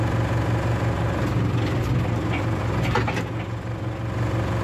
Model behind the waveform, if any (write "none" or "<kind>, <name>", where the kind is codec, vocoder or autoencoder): none